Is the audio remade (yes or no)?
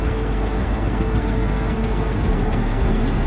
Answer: yes